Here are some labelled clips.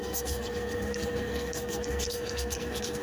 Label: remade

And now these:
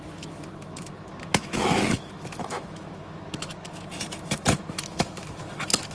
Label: remade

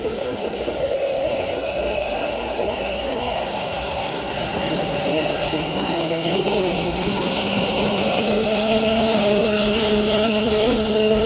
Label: remade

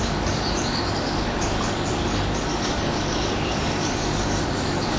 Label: remade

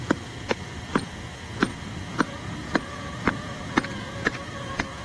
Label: remade